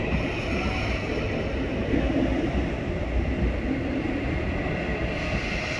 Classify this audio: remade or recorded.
recorded